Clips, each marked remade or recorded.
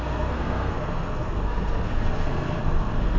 remade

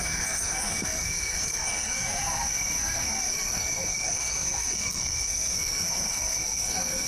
remade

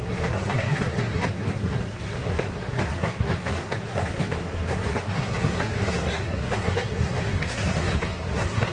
remade